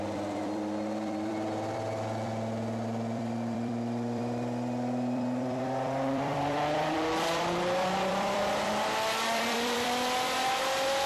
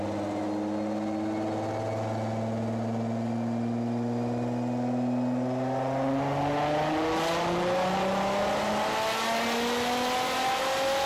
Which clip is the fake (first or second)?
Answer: first